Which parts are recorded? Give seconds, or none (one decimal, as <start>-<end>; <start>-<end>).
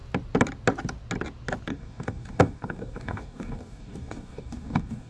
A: 0.0-1.7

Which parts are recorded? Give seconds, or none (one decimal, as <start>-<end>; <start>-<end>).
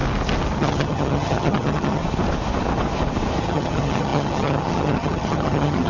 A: 0.0-0.6; 2.0-3.4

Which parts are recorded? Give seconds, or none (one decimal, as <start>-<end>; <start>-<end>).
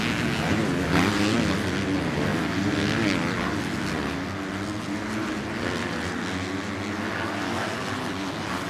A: 0.0-8.7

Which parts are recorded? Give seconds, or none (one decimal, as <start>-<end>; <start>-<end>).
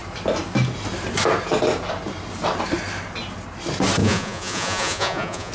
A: 0.0-4.0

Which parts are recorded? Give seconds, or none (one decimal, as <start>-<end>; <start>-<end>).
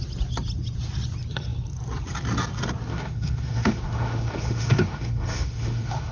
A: 0.0-2.9